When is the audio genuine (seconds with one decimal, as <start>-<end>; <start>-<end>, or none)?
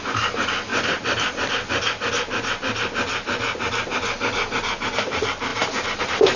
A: 0.0-6.4